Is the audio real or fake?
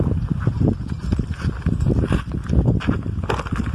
real